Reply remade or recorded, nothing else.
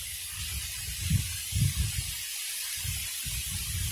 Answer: recorded